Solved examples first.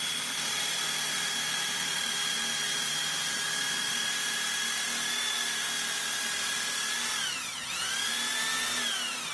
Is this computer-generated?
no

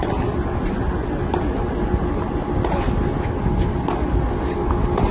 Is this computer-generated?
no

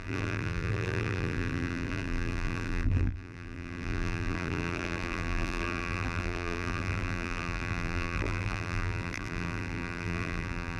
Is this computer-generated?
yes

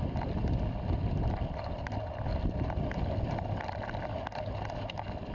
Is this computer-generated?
yes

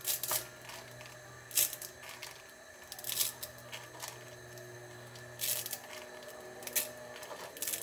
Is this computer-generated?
no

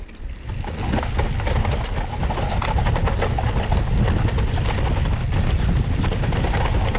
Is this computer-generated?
no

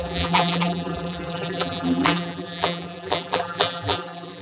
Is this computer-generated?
yes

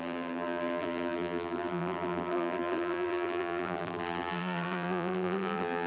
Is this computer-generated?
yes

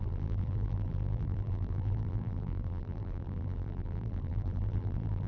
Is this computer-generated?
yes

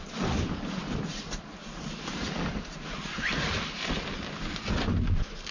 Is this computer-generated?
no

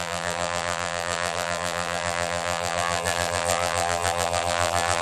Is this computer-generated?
yes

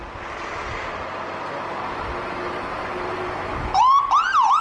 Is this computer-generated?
no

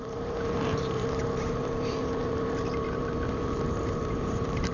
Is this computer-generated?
yes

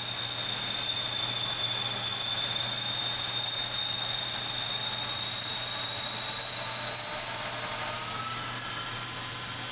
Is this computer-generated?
no